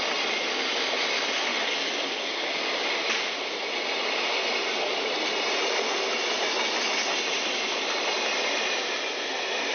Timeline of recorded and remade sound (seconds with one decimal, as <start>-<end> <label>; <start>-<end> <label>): 0.0-1.5 recorded; 1.5-2.9 remade; 2.9-9.7 recorded